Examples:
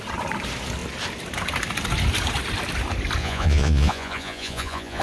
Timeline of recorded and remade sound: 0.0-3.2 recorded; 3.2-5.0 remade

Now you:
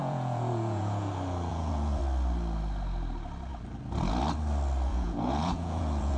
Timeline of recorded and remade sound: 0.0-1.1 remade; 1.1-1.5 recorded; 1.5-2.0 remade; 2.0-4.9 recorded; 4.9-6.2 remade

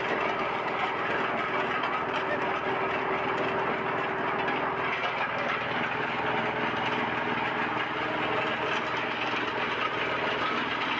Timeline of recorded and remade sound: 0.0-11.0 recorded

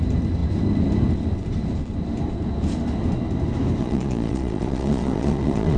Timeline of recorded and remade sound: 0.0-3.8 recorded; 3.8-5.8 remade